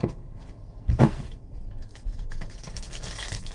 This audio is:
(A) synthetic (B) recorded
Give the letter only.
A